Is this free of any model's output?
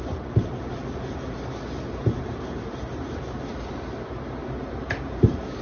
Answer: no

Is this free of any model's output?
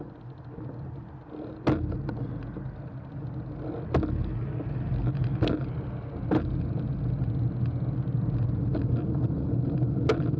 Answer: yes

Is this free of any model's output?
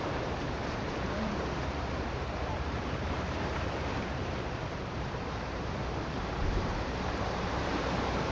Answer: no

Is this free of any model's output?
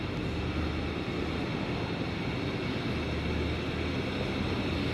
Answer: yes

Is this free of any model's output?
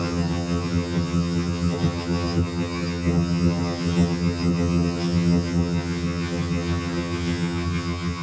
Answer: no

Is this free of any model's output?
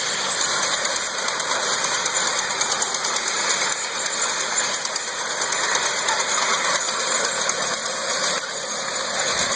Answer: yes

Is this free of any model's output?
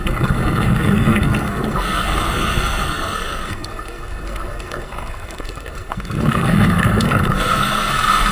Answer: no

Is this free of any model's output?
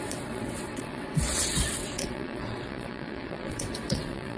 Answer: no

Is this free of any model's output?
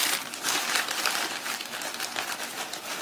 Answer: yes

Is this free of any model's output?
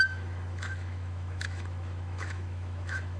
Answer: no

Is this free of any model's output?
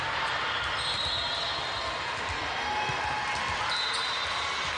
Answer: yes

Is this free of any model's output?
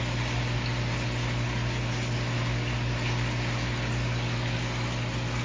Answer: yes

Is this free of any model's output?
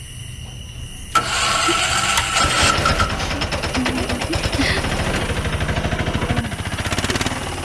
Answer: yes